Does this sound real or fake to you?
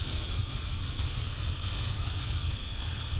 fake